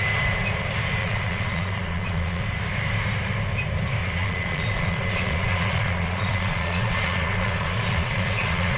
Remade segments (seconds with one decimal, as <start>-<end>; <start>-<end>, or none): 1.0-2.4; 4.0-8.8